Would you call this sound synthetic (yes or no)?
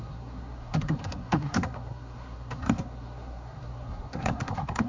yes